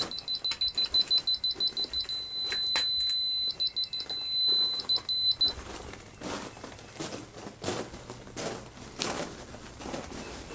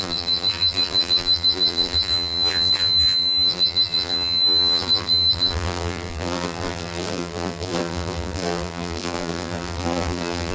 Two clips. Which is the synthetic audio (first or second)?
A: second